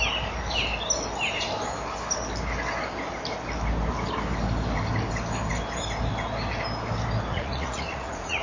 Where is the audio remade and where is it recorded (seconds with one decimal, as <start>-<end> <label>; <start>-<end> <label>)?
0.0-7.3 recorded; 7.3-8.4 remade